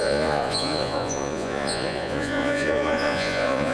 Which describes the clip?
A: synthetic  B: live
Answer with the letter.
A